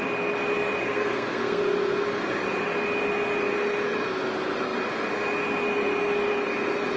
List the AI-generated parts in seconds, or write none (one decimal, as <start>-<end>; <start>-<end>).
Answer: 0.8-1.6